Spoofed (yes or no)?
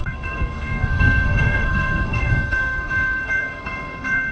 yes